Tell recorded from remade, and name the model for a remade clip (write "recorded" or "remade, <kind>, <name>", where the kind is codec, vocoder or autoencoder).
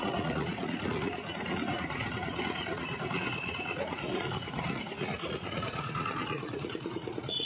remade, vocoder, Vocos